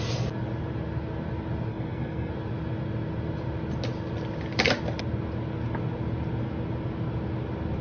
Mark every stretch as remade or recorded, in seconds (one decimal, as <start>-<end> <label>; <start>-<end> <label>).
0.0-1.7 recorded; 1.7-2.3 remade; 2.3-7.8 recorded